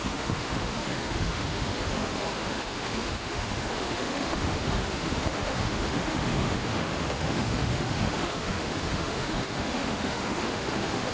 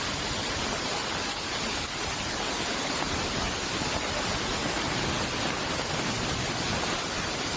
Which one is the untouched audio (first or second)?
second